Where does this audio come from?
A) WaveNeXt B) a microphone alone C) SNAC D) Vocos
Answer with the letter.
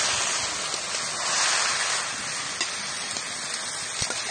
B